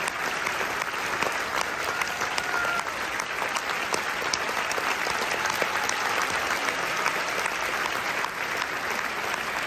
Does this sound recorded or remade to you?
recorded